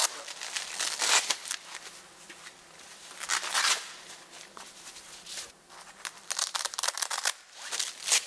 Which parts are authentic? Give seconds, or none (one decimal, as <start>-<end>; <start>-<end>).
0.0-8.3